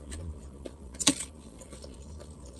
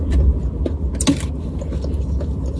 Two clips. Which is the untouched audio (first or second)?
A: second